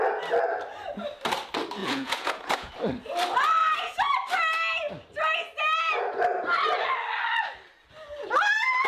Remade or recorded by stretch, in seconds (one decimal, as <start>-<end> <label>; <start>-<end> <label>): 0.0-1.8 recorded; 1.8-2.7 remade; 2.7-8.9 recorded